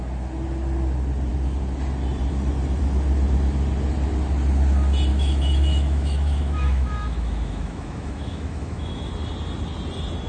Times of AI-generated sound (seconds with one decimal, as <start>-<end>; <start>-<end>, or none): 5.1-9.1